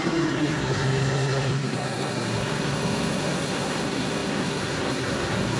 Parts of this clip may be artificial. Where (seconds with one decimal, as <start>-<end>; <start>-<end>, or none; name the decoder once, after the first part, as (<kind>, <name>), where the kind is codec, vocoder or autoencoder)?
0.0-5.6 (codec, SNAC)